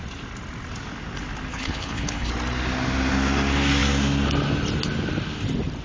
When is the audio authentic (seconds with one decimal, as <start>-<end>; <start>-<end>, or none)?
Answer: 0.0-1.5; 2.3-5.8